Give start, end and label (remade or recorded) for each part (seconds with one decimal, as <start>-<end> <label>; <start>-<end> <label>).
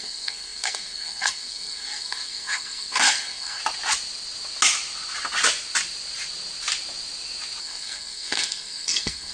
0.0-3.6 remade; 3.6-7.6 recorded; 7.6-9.3 remade